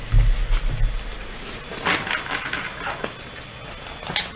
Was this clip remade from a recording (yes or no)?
no